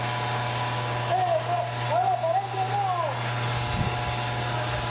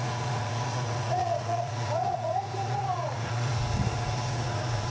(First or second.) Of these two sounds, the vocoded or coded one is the second